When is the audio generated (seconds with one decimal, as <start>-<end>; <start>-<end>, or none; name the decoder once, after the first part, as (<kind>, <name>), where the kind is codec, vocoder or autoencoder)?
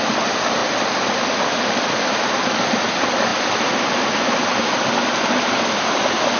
none